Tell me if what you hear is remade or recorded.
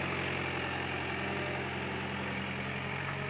recorded